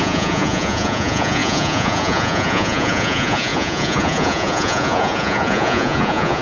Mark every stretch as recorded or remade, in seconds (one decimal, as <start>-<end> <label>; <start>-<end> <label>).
0.0-6.4 remade